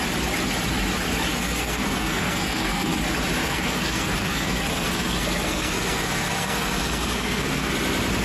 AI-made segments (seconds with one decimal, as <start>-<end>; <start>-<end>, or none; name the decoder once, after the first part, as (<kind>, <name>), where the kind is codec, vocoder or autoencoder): 1.3-2.9 (codec, SNAC); 3.4-7.7